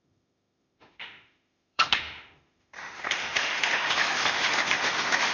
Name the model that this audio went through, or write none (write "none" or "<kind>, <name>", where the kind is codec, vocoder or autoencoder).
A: autoencoder, DAC-VAE